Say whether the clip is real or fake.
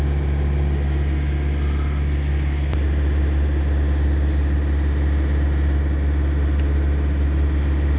real